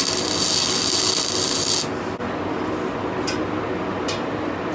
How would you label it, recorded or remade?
recorded